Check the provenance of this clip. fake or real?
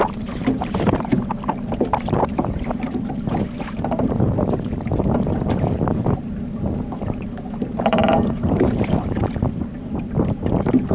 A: fake